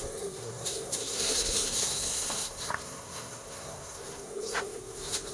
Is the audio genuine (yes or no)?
no